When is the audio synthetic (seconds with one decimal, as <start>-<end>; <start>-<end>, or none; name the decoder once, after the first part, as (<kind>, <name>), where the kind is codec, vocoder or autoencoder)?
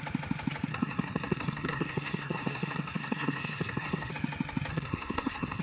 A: 0.7-4.1 (codec, SNAC); 4.7-5.6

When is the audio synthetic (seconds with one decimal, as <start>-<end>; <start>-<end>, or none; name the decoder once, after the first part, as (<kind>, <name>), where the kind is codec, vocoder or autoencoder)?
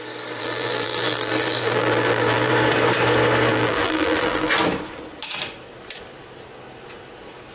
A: 0.4-2.5 (vocoder, BigVGAN v2); 3.5-4.5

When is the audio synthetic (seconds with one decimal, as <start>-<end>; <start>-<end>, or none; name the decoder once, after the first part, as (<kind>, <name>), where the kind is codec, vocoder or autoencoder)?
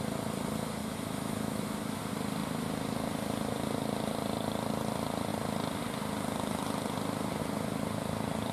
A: 0.8-2.0 (autoencoder, DAC-VAE)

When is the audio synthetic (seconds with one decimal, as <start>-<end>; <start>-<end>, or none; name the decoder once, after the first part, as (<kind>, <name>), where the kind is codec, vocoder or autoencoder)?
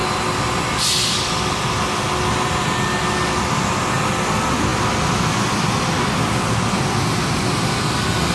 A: none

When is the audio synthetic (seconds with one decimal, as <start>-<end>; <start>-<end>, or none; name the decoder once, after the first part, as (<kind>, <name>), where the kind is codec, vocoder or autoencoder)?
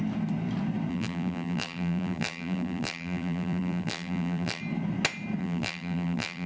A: 0.9-4.6 (vocoder, BigVGAN v2); 5.4-6.5